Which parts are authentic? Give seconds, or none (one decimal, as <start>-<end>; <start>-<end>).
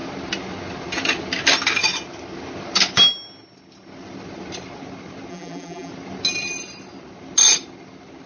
0.0-5.3; 5.9-8.3